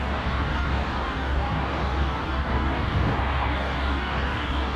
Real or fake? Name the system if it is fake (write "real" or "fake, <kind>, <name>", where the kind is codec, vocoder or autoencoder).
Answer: fake, codec, DAC